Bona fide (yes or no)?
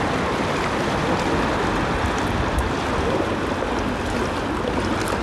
yes